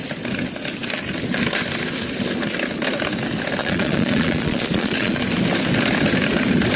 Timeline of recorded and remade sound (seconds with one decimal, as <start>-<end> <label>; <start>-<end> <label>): 0.0-3.6 recorded; 3.6-5.2 remade; 5.2-6.8 recorded